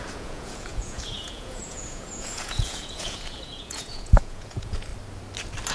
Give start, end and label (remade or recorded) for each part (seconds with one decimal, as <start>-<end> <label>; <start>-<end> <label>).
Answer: 0.0-4.9 remade; 4.9-5.7 recorded